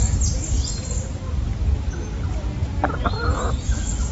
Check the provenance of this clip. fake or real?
real